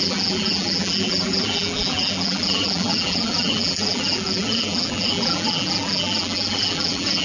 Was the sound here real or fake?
fake